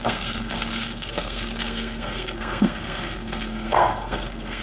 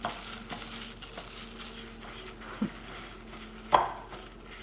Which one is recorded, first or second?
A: second